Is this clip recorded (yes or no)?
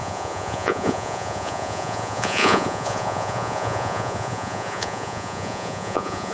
no